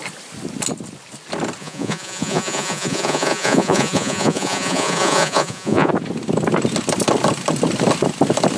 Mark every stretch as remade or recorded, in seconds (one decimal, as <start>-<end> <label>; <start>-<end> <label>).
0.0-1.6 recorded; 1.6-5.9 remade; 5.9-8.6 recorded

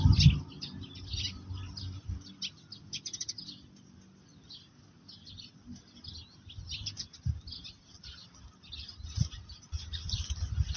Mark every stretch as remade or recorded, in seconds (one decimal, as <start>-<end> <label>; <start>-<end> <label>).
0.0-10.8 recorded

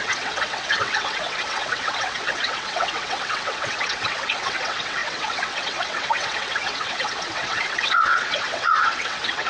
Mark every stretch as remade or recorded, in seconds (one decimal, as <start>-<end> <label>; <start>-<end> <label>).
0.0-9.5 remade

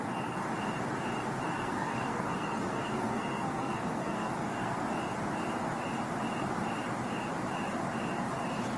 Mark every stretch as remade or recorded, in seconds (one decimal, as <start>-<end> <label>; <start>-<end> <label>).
0.0-1.6 recorded; 1.6-4.8 remade; 4.8-8.8 recorded